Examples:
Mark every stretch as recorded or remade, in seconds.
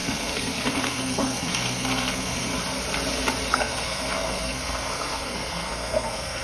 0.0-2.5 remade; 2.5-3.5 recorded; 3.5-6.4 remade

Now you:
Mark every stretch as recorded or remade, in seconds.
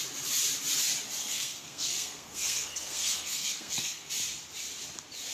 0.0-1.2 recorded; 1.2-4.1 remade; 4.1-5.3 recorded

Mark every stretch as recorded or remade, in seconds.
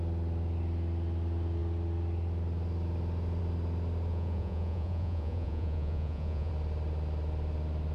0.0-4.1 recorded; 4.1-6.5 remade; 6.5-7.9 recorded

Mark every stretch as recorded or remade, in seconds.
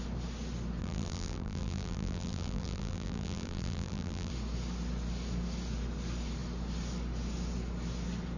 0.0-0.8 recorded; 0.8-4.3 remade; 4.3-8.4 recorded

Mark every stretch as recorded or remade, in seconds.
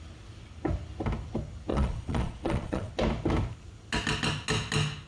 0.0-1.7 recorded; 1.7-2.9 remade; 2.9-5.1 recorded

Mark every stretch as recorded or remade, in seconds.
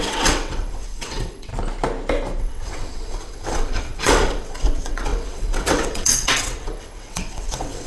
0.0-1.5 remade; 1.5-2.4 recorded; 2.4-7.9 remade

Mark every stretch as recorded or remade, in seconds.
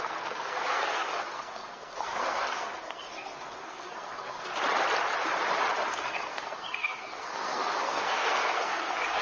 0.0-4.5 remade; 4.5-5.9 recorded; 5.9-9.2 remade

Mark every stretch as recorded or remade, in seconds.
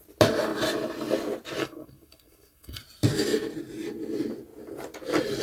0.0-1.6 recorded; 1.6-2.8 remade; 2.8-5.4 recorded